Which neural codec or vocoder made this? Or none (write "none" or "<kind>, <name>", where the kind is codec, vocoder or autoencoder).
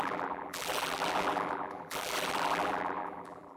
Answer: vocoder, BigVGAN v2